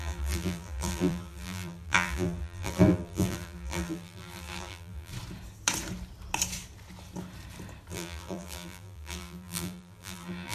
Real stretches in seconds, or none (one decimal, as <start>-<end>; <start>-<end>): 5.1-7.9